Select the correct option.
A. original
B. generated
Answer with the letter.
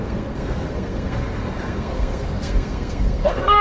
B